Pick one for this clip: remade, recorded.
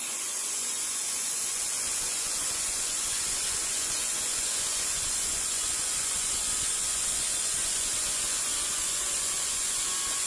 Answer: remade